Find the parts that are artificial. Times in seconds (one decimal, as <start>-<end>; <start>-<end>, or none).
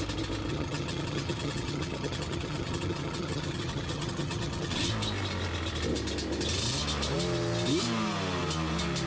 0.5-4.9